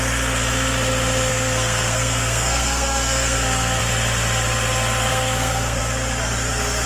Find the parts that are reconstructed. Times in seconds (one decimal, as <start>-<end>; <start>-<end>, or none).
1.3-3.8; 5.1-5.8